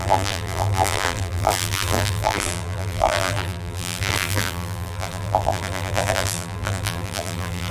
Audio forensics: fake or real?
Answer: fake